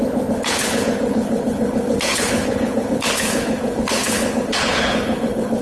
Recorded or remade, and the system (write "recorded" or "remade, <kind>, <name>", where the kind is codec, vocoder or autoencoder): remade, codec, HILCodec